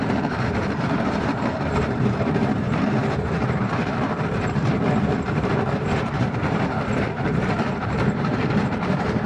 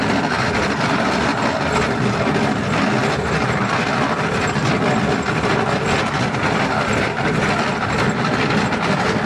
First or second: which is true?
second